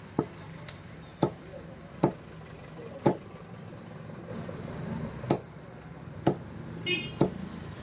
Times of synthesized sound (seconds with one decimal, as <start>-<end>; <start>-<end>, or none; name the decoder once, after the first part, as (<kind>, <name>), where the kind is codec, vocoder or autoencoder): none